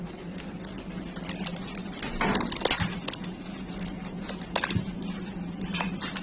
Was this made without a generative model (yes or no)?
yes